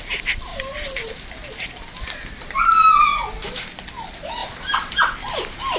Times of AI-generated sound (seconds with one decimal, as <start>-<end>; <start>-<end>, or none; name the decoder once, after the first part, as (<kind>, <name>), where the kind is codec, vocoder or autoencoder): 0.5-1.3 (vocoder, BigVGAN v2); 3.1-3.8; 4.4-5.0